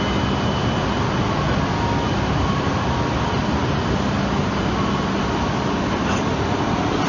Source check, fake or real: real